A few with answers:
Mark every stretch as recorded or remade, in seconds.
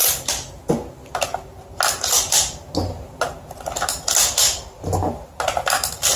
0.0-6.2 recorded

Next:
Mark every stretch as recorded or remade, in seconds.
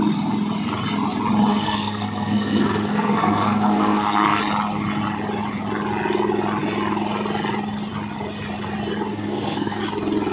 0.0-1.5 recorded; 1.5-4.4 remade; 4.4-9.1 recorded; 9.1-9.8 remade; 9.8-10.3 recorded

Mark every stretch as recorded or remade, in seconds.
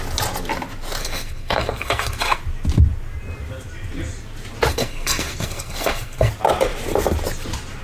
0.0-1.0 recorded; 1.0-2.4 remade; 2.4-4.7 recorded; 4.7-6.3 remade; 6.3-7.8 recorded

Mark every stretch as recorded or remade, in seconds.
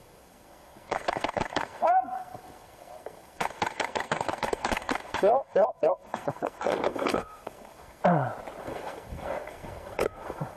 0.0-8.0 remade; 8.0-8.6 recorded; 8.6-10.6 remade